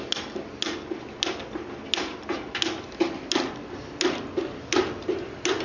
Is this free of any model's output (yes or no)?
yes